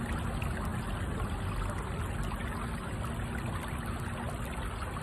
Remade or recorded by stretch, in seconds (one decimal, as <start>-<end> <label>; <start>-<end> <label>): 0.0-5.0 recorded

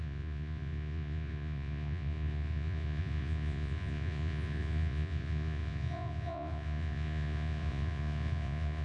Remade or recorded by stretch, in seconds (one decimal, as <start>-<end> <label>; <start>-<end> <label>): 0.0-8.8 remade

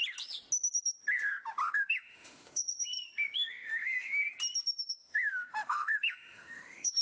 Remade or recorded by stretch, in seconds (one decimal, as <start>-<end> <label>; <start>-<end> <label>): 0.0-1.7 recorded; 1.7-2.9 remade; 2.9-3.5 recorded; 3.5-4.2 remade; 4.2-4.9 recorded; 4.9-7.0 remade

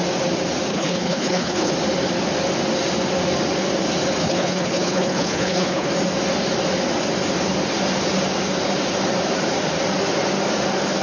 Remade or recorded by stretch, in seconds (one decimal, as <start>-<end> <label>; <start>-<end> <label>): 0.0-0.7 recorded; 0.7-1.7 remade; 1.7-4.2 recorded; 4.2-5.9 remade; 5.9-11.0 recorded